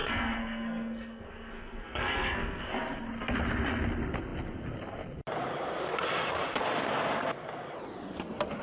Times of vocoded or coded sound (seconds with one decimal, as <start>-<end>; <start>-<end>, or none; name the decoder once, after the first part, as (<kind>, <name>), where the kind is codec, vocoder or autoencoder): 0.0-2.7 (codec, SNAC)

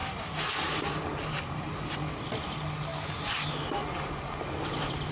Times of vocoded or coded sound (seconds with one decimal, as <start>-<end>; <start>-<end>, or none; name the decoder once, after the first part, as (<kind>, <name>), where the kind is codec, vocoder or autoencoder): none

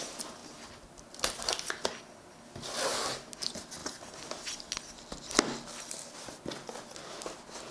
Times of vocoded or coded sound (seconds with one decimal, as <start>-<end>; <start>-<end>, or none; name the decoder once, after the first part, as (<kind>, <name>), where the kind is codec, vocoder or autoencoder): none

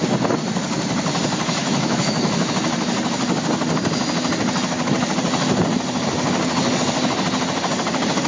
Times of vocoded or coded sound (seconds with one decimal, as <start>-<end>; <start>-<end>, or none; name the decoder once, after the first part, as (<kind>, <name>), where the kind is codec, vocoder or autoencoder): 1.6-2.5 (autoencoder, DAC-VAE)

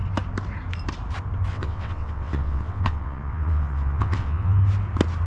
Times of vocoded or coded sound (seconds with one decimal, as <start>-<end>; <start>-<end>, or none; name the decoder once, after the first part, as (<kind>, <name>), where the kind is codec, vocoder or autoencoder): 1.5-4.6 (vocoder, WaveNeXt)

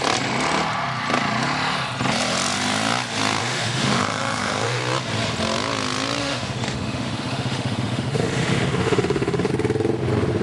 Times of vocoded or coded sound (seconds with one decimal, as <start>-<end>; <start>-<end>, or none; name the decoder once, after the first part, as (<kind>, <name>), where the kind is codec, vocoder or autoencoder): 3.4-4.8 (autoencoder, DAC-VAE); 6.2-9.5

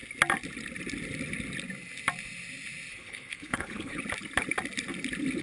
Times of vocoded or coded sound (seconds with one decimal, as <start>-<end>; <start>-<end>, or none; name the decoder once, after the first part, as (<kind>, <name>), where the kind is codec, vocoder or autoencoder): 2.9-4.0 (codec, HILCodec)